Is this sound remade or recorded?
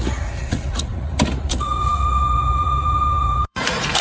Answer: remade